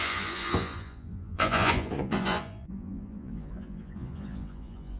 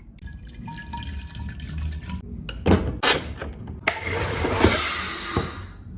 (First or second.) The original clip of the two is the second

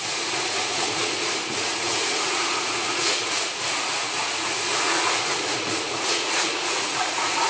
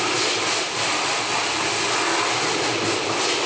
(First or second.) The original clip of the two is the second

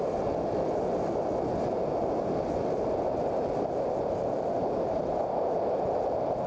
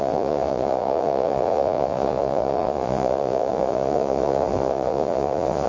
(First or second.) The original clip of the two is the first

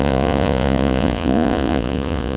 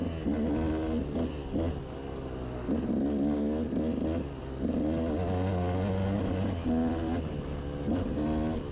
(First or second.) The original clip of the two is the second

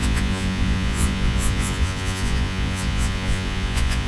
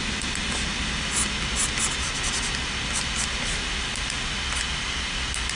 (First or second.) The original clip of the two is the second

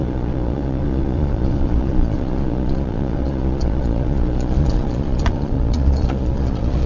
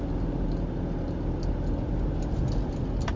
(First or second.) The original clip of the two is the second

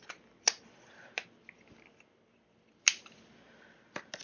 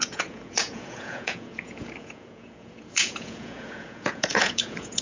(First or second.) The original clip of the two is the first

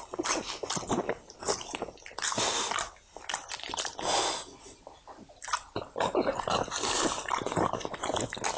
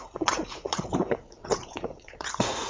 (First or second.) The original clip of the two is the first